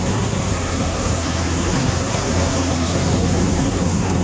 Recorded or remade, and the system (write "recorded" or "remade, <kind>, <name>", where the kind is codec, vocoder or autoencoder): remade, codec, SNAC